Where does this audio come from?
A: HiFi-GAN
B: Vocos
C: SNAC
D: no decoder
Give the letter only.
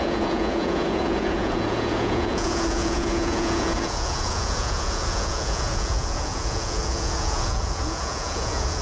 B